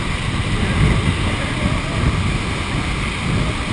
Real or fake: real